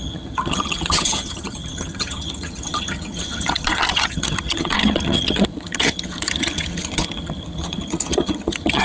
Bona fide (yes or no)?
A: no